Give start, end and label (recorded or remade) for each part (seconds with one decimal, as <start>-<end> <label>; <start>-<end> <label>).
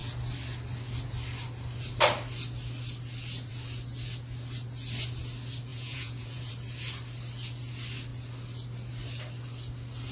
0.0-5.7 recorded; 5.7-6.5 remade; 6.5-10.1 recorded